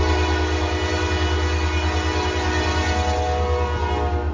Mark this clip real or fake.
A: real